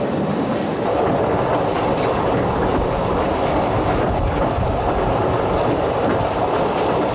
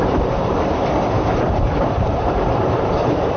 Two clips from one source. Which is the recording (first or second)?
first